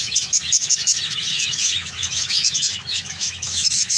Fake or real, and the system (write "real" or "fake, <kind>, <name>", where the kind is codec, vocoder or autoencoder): fake, autoencoder, DAC-VAE